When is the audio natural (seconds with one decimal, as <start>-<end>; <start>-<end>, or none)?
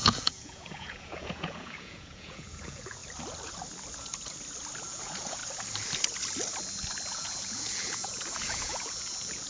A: 3.0-4.8; 5.4-7.1